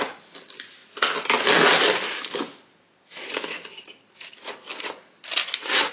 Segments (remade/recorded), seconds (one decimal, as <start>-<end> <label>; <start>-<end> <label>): 0.0-5.9 recorded